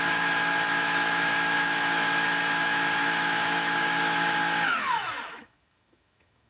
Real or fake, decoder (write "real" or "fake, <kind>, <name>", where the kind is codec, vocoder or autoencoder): fake, autoencoder, DAC-VAE